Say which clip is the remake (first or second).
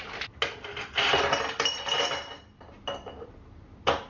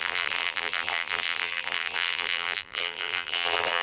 second